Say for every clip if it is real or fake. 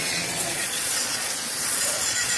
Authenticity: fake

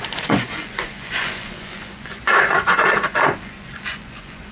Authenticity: fake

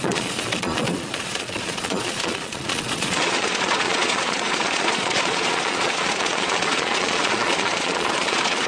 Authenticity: fake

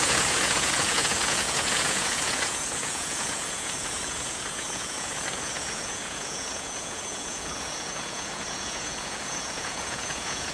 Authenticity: fake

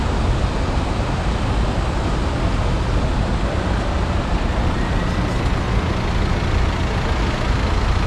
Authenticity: real